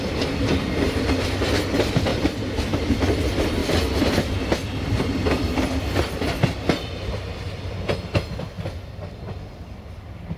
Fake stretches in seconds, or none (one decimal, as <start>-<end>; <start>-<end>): 2.1-2.8